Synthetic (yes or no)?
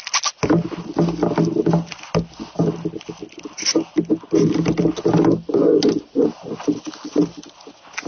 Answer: no